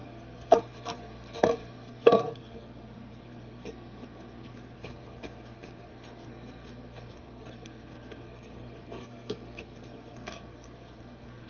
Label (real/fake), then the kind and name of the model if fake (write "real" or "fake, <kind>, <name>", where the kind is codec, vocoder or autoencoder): fake, codec, SNAC